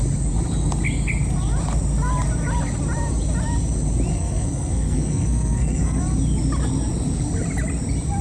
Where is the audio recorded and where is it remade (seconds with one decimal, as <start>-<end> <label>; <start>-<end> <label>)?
0.0-4.1 recorded; 4.1-6.0 remade; 6.0-8.2 recorded